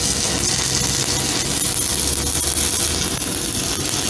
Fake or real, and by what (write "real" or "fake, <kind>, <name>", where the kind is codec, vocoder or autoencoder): real